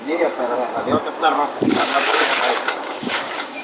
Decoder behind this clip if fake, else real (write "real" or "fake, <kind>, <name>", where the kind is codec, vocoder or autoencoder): fake, codec, DAC